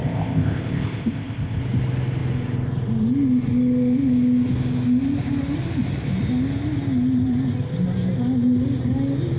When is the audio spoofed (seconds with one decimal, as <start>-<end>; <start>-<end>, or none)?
0.0-1.6